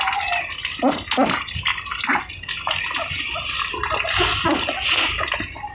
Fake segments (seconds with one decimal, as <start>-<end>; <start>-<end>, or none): none